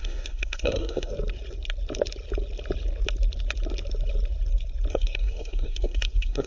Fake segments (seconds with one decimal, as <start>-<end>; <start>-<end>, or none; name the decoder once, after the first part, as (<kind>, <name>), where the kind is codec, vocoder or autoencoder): 0.0-1.1 (codec, SNAC); 4.9-6.5